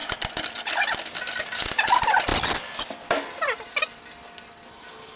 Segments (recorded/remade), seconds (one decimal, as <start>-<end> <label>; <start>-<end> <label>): 0.0-5.2 recorded